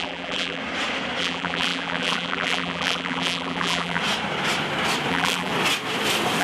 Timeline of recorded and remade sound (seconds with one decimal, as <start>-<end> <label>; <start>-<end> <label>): 0.0-0.6 remade; 0.6-1.2 recorded; 1.2-4.0 remade; 4.0-5.1 recorded; 5.1-5.5 remade; 5.5-6.4 recorded